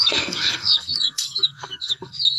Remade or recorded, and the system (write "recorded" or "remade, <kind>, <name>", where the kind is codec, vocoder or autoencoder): remade, codec, SNAC